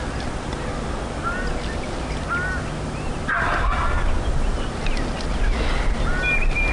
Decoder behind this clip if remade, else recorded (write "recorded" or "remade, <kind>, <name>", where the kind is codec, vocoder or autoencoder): recorded